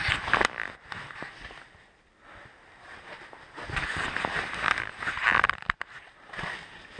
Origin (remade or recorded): recorded